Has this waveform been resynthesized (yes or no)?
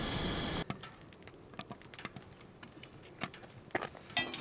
no